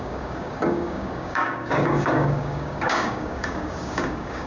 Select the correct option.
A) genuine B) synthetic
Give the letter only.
B